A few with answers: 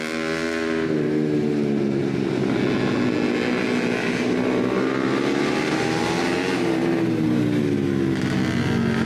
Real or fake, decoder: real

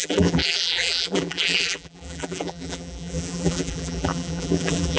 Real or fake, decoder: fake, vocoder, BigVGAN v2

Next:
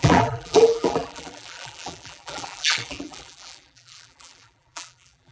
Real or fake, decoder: fake, vocoder, BigVGAN v2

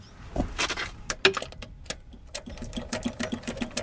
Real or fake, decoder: real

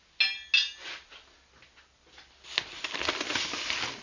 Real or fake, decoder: real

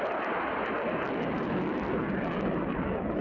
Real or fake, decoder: real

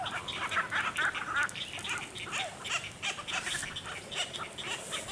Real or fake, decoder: fake, vocoder, BigVGAN v2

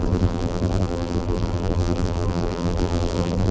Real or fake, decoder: fake, vocoder, BigVGAN v2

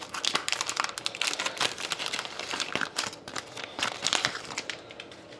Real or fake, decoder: fake, vocoder, BigVGAN v2